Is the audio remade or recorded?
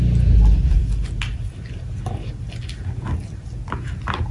recorded